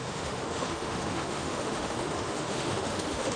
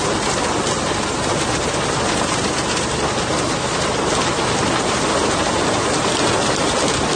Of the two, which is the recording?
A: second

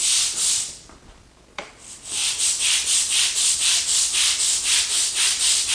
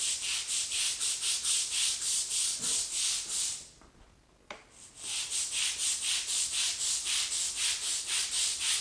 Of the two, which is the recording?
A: second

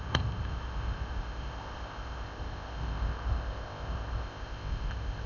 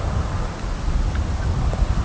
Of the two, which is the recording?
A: second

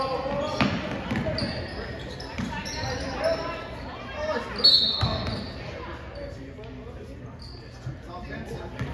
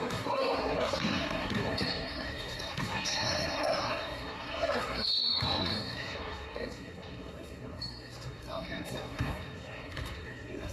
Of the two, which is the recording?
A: first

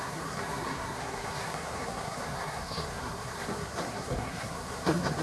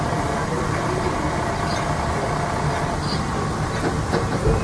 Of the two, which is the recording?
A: second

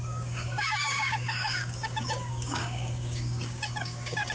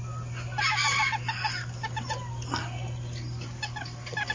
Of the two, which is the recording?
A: second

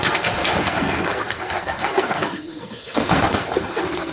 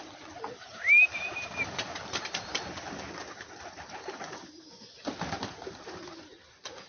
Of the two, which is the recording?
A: second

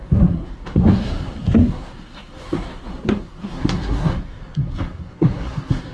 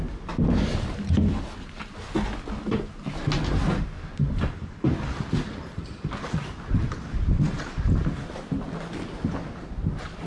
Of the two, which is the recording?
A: second